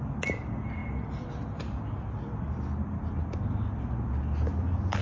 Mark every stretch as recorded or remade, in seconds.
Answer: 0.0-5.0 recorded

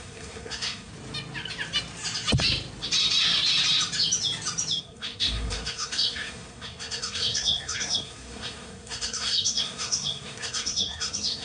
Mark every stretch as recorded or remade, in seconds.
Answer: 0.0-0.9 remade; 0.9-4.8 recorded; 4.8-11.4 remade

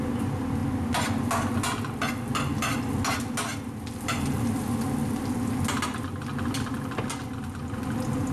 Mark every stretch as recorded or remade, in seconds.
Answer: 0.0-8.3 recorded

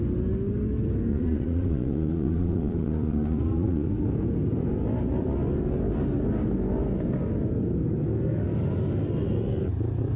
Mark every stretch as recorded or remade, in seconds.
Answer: 0.0-1.1 recorded; 1.1-3.9 remade; 3.9-10.2 recorded

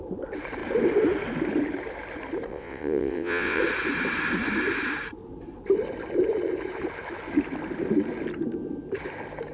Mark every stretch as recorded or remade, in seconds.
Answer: 0.0-2.5 recorded; 2.5-3.6 remade; 3.6-9.5 recorded

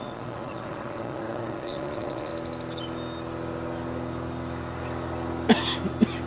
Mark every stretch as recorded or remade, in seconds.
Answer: 0.0-2.3 remade; 2.3-6.3 recorded